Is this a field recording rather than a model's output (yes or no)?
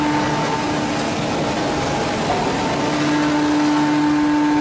yes